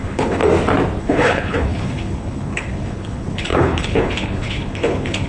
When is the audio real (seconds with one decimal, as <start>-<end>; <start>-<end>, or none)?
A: 0.4-1.0

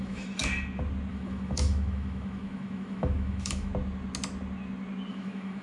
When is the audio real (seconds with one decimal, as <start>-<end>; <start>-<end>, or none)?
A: 0.4-1.1; 3.7-5.1